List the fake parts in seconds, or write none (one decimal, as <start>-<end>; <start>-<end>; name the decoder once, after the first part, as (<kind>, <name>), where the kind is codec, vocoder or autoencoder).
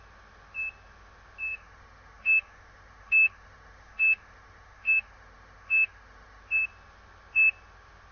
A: 1.5-6.4 (autoencoder, DAC-VAE)